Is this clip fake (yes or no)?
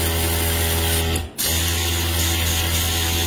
no